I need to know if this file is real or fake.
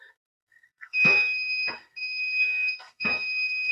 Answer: fake